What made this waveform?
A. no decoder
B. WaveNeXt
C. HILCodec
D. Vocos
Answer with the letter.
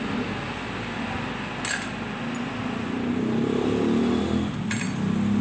A